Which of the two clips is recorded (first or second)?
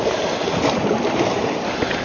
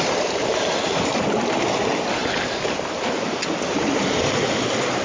second